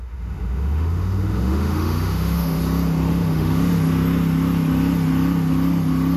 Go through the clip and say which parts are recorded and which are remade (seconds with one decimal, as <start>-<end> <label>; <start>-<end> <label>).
0.0-2.6 remade; 2.6-3.1 recorded; 3.1-3.7 remade; 3.7-6.2 recorded